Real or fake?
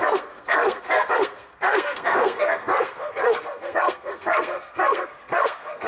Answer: fake